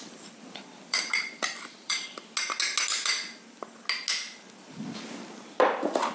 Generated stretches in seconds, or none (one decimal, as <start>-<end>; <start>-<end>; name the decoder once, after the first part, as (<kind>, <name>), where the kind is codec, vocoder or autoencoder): 0.0-1.9 (vocoder, BigVGAN v2); 5.6-6.1